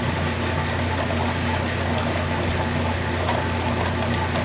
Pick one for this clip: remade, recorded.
recorded